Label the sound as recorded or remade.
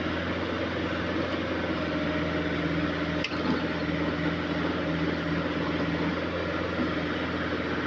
recorded